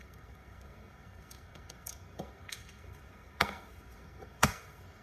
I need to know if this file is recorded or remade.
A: remade